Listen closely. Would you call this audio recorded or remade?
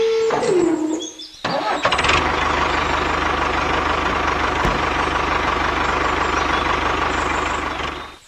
recorded